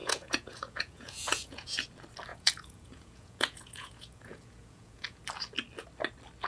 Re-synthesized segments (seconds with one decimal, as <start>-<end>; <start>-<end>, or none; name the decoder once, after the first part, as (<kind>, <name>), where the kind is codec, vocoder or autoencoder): 0.0-1.9 (vocoder, Vocos); 2.3-5.2